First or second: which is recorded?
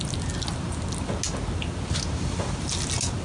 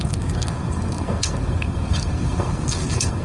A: first